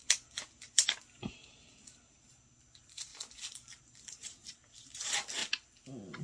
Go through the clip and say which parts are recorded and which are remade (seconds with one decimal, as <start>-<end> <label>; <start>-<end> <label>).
0.0-3.1 remade; 3.1-3.8 recorded; 3.8-5.4 remade; 5.4-6.2 recorded

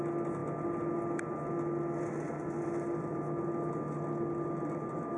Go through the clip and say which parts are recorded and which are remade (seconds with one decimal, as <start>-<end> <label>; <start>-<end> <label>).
0.0-5.2 recorded

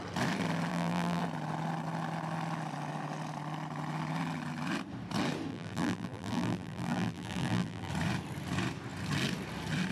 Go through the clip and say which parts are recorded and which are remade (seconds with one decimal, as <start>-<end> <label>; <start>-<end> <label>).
0.0-0.7 recorded; 0.7-1.2 remade; 1.2-5.5 recorded; 5.5-7.9 remade; 7.9-9.9 recorded

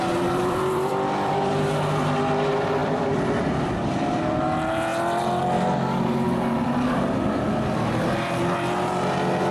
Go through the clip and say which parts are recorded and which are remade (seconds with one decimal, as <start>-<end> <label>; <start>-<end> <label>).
0.0-0.4 recorded; 0.4-1.5 remade; 1.5-2.8 recorded; 2.8-4.2 remade; 4.2-9.5 recorded

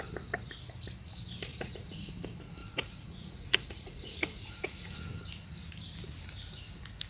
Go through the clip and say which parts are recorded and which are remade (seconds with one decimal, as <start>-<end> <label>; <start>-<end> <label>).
0.0-1.5 recorded; 1.5-2.1 remade; 2.1-2.6 recorded; 2.6-5.0 remade; 5.0-7.1 recorded